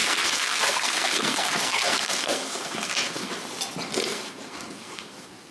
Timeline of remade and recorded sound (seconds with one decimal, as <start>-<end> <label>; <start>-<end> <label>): 0.0-3.3 remade; 3.3-4.1 recorded; 4.1-5.5 remade